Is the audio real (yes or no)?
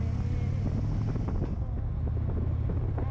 yes